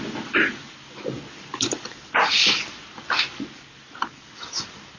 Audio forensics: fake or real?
real